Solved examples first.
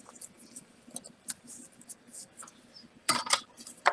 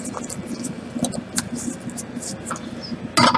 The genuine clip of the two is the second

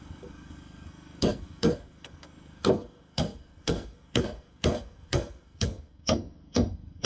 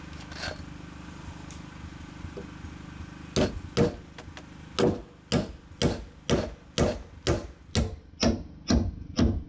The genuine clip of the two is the second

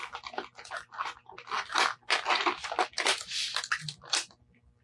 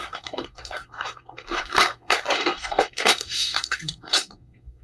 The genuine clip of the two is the first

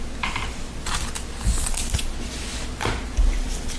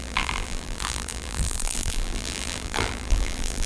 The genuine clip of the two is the first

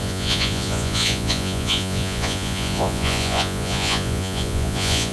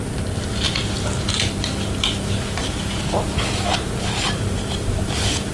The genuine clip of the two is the second